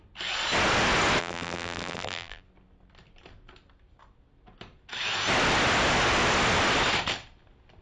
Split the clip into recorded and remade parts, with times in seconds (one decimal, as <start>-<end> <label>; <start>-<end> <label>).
0.0-1.2 recorded; 1.2-2.4 remade; 2.4-7.8 recorded